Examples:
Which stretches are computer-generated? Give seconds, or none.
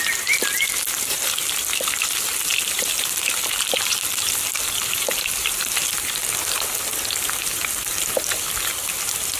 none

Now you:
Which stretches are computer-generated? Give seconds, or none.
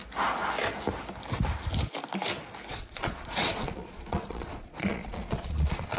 2.7-6.0 (vocoder, Vocos)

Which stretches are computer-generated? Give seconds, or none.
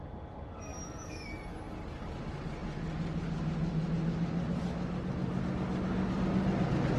none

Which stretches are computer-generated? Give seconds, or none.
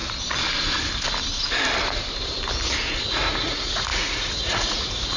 3.1-5.2 (vocoder, Vocos)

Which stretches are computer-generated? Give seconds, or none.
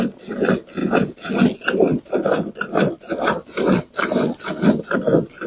0.8-1.3 (vocoder, Vocos)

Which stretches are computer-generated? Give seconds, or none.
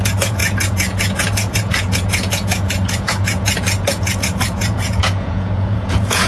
0.0-6.3 (vocoder, Vocos)